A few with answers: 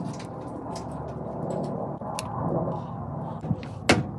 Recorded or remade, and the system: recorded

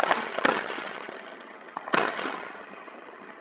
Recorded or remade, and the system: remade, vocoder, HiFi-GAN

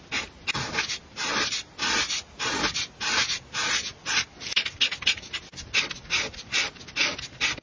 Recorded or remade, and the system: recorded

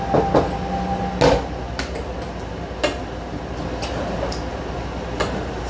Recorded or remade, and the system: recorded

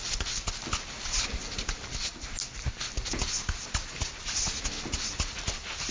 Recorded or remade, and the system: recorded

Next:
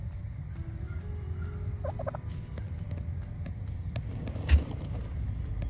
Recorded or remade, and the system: recorded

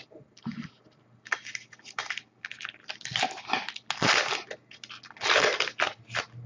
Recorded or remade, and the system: recorded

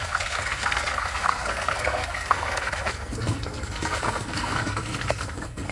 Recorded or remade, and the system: remade, codec, SNAC